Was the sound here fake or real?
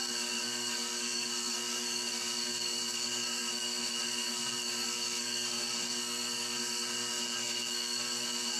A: fake